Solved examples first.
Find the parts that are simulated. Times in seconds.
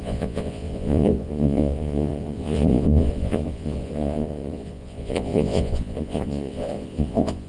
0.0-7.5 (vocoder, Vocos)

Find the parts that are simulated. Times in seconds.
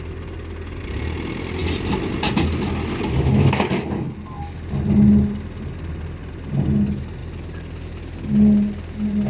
none